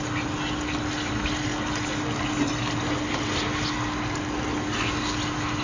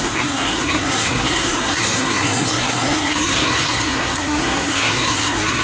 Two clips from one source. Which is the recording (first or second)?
first